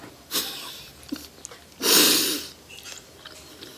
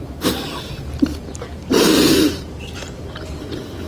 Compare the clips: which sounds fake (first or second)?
second